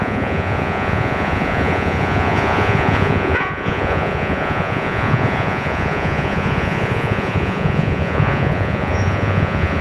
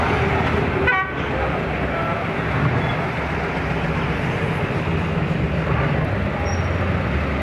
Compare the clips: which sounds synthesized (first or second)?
first